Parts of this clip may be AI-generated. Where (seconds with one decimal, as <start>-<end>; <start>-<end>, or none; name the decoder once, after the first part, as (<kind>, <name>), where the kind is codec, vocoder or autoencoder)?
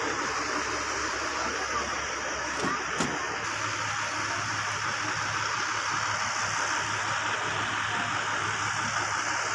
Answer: none